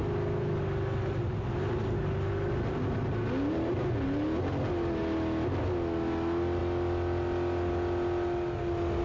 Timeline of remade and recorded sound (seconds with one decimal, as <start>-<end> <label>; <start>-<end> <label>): 0.0-9.0 recorded